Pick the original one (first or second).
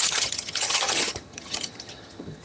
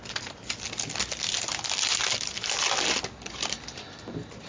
second